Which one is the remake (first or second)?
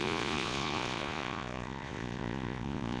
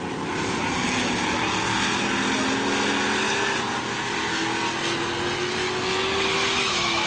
first